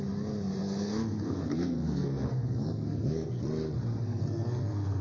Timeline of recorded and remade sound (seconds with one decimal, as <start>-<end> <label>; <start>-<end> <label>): 0.0-0.6 recorded; 0.6-3.4 remade; 3.4-4.0 recorded; 4.0-5.0 remade